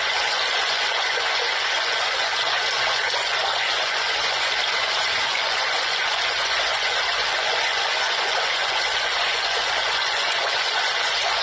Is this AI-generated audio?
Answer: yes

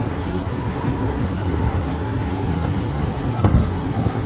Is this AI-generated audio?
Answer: yes